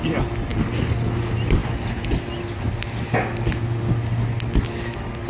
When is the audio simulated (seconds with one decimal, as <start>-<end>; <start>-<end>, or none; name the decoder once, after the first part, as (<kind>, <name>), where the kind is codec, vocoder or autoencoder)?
none